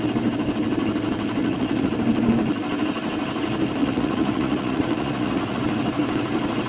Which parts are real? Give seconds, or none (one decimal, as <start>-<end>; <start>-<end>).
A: 0.0-1.4; 1.9-3.8; 5.6-6.7